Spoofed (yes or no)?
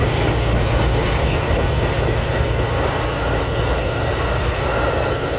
no